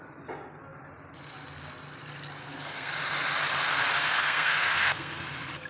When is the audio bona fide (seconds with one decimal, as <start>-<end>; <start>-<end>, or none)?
0.0-2.4; 2.9-4.0; 5.2-5.7